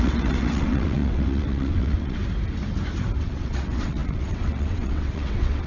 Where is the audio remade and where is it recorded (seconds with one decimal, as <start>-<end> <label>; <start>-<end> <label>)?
0.0-2.2 remade; 2.2-3.2 recorded; 3.2-5.7 remade